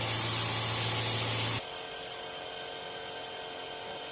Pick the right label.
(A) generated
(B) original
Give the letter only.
B